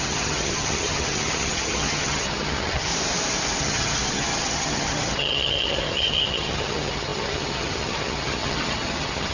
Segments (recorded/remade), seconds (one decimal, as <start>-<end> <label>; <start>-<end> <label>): 0.0-2.9 remade; 2.9-3.6 recorded; 3.6-9.3 remade